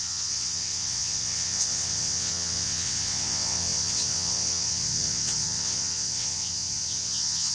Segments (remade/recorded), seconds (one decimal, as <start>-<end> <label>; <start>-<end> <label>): 0.0-7.5 remade